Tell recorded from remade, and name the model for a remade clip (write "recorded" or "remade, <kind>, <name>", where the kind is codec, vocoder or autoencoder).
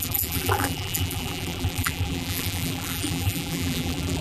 remade, vocoder, BigVGAN v2